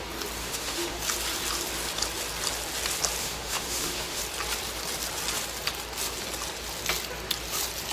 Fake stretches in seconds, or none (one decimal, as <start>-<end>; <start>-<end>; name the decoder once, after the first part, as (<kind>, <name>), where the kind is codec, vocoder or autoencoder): 0.4-1.0 (autoencoder, DAC-VAE); 3.2-4.2